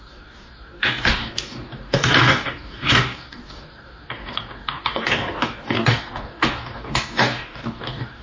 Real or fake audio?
fake